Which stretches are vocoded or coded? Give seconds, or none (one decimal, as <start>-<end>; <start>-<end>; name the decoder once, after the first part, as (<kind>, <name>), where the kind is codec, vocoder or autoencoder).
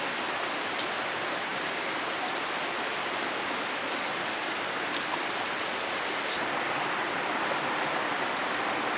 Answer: none